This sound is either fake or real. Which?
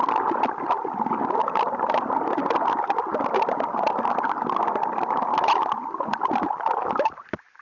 real